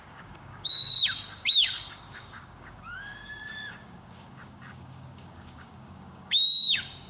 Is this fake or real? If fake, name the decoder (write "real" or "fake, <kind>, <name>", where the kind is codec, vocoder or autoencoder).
fake, codec, DAC